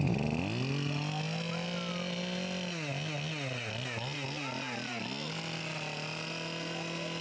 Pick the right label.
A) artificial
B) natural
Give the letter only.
B